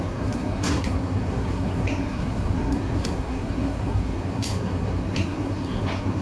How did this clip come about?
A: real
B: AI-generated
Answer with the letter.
B